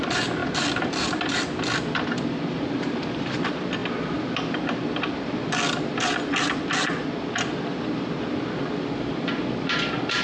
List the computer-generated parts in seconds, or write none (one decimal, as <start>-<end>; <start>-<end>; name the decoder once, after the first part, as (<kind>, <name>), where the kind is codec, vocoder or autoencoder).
0.0-10.2 (vocoder, BigVGAN v2)